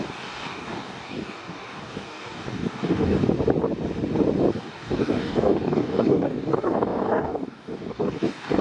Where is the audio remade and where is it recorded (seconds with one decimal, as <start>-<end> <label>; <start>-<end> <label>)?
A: 0.0-3.2 remade; 3.2-4.5 recorded; 4.5-8.6 remade